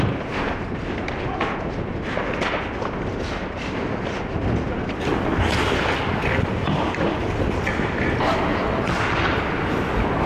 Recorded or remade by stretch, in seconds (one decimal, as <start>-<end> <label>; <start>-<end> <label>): 0.0-10.3 recorded